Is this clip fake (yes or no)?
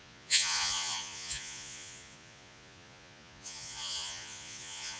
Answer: yes